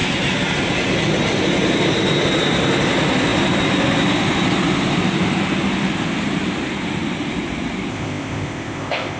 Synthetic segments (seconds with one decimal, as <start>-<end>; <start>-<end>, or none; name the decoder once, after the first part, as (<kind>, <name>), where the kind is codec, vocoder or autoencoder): 7.9-9.2 (codec, ZipCodec)